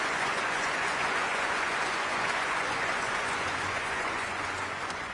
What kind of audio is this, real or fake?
fake